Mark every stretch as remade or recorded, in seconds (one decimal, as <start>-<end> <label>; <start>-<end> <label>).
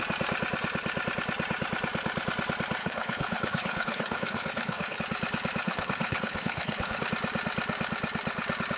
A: 0.0-2.8 recorded; 2.8-5.0 remade; 5.0-5.6 recorded; 5.6-7.1 remade; 7.1-8.8 recorded